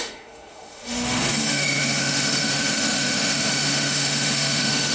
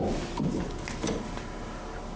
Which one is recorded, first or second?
second